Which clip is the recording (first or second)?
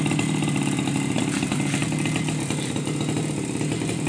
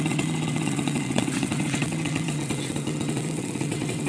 first